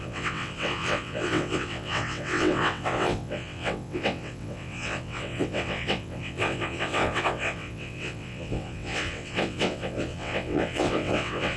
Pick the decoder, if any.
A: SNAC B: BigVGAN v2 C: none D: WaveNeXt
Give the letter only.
D